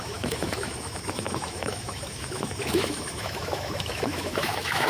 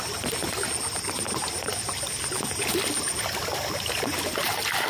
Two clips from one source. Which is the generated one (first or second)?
first